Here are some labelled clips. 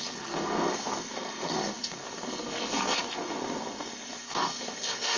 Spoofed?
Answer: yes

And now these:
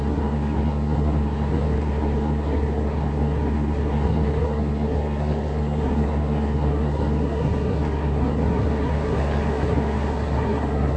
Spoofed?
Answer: yes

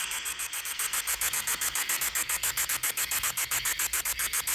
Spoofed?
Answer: yes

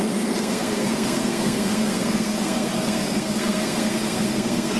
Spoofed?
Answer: yes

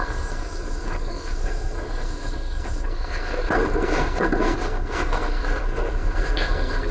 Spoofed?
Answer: yes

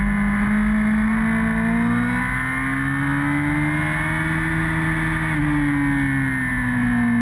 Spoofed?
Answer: no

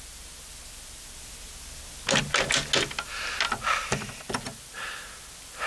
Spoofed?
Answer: no